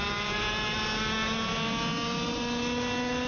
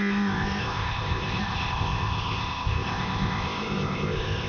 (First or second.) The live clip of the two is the first